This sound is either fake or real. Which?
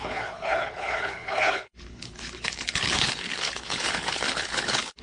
fake